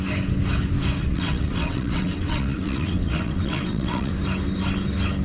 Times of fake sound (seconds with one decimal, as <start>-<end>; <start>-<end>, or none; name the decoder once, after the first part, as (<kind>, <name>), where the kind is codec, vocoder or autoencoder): 1.0-4.1 (vocoder, WaveNeXt)